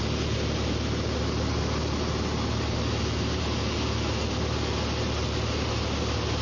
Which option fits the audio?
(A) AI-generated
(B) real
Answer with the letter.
B